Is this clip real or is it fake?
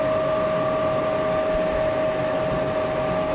real